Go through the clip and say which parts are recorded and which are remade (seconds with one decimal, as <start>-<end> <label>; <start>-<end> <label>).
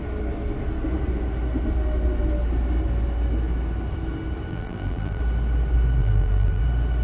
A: 0.0-4.5 recorded; 4.5-5.2 remade; 5.2-6.0 recorded; 6.0-6.6 remade; 6.6-7.0 recorded